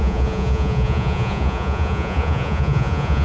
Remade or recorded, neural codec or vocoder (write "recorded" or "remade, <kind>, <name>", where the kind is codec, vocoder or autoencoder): remade, vocoder, Vocos